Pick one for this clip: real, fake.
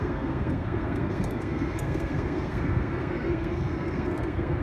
fake